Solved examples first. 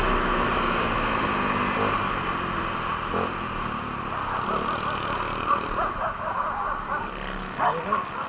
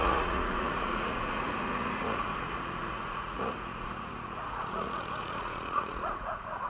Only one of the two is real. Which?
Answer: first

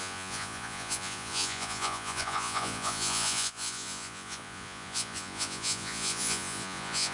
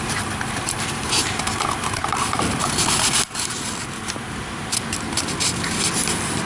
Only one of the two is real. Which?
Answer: second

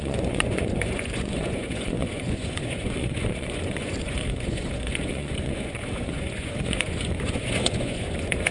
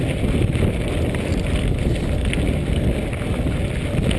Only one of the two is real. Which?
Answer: second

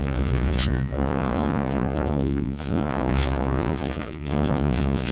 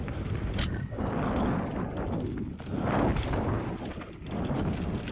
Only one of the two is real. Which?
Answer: second